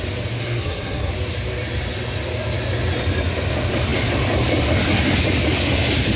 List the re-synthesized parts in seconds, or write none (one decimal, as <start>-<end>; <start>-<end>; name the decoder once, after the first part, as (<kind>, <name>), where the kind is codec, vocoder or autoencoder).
0.4-1.1 (codec, SNAC)